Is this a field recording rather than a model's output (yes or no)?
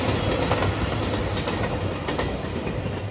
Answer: yes